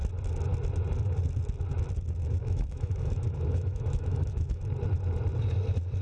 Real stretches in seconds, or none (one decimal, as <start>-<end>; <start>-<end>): 0.0-2.4; 4.6-6.0